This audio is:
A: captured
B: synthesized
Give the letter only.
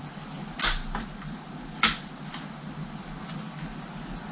A